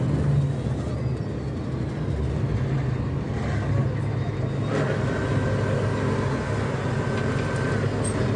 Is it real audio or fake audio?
real